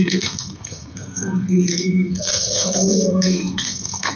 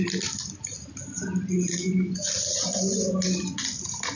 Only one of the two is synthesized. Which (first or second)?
first